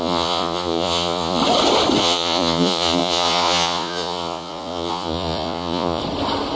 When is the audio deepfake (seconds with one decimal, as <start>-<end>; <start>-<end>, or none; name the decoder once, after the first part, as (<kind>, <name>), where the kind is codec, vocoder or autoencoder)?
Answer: 0.0-1.4 (vocoder, Vocos); 2.0-6.0

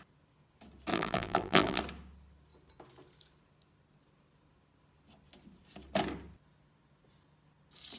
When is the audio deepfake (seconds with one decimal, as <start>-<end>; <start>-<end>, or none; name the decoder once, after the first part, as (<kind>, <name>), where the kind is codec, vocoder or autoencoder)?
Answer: 0.9-1.8 (vocoder, BigVGAN v2)